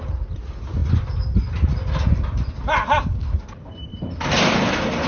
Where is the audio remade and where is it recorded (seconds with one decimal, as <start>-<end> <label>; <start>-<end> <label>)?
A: 0.0-5.1 recorded